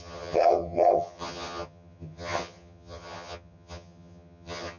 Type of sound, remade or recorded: remade